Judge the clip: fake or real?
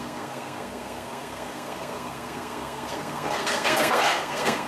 fake